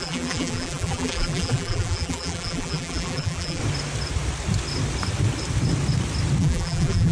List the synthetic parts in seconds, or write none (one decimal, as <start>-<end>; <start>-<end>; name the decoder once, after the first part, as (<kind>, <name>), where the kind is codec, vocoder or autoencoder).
0.0-3.6 (vocoder, BigVGAN v2); 6.4-7.1